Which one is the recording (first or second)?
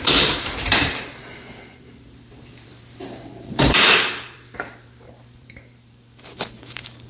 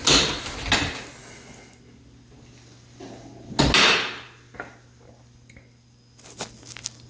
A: second